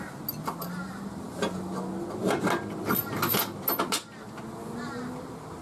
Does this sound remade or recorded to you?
recorded